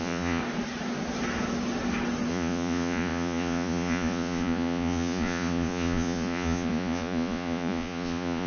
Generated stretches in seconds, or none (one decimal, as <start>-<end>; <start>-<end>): 0.0-0.4; 2.3-8.5